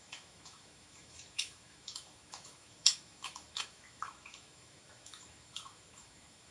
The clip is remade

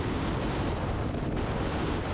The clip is recorded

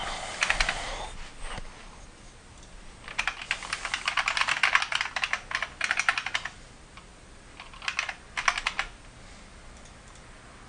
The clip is recorded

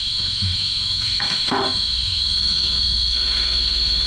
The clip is remade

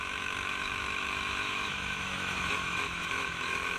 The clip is remade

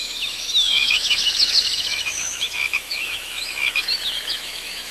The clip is remade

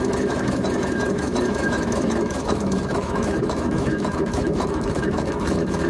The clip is remade